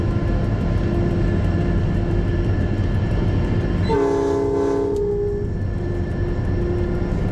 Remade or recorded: recorded